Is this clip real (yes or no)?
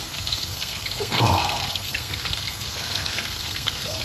no